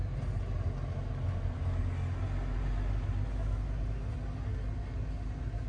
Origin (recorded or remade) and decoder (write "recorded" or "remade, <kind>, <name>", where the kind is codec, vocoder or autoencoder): recorded